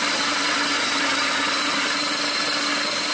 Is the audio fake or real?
real